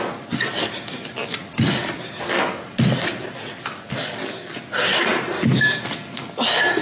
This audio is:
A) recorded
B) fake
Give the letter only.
A